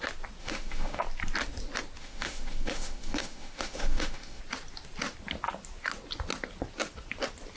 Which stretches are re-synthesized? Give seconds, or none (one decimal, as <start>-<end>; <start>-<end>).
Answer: 0.4-1.0; 2.0-4.4

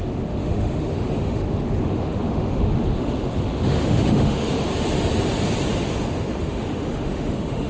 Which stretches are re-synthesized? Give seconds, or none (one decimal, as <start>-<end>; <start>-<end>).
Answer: 0.0-4.7; 6.4-7.7

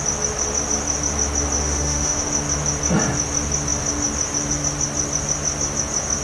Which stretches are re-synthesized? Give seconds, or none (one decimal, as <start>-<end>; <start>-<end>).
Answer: 1.6-2.2

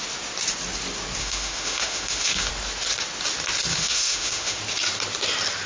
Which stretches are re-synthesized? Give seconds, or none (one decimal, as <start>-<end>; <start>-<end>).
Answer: 1.2-2.5; 3.7-4.6